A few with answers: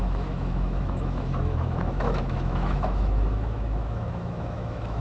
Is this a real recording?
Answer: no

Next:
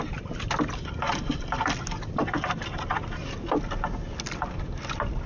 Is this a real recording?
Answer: yes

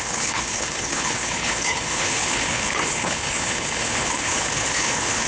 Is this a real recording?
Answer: no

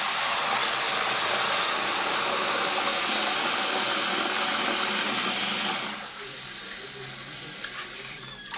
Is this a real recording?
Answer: yes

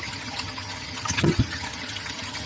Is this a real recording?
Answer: no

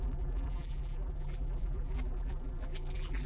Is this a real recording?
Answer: no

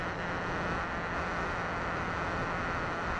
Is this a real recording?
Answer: yes